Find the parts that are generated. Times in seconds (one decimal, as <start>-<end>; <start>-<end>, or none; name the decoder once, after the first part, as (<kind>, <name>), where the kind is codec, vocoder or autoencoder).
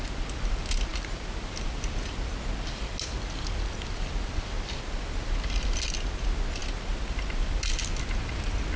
none